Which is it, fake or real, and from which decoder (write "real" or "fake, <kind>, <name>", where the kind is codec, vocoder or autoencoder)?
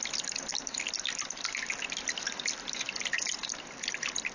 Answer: real